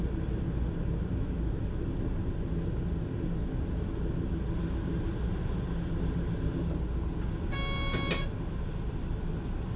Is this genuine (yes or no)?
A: yes